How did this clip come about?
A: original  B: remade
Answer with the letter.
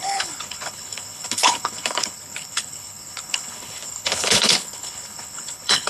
B